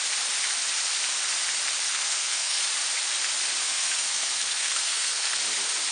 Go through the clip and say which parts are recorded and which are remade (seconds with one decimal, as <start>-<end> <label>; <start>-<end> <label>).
0.0-1.9 recorded; 1.9-2.6 remade; 2.6-3.6 recorded; 3.6-5.4 remade; 5.4-5.9 recorded

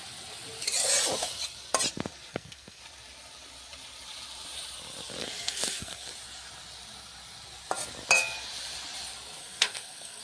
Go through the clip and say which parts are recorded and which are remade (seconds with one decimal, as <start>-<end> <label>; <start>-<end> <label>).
0.0-2.3 recorded; 2.3-2.8 remade; 2.8-5.2 recorded; 5.2-6.1 remade; 6.1-9.4 recorded; 9.4-10.2 remade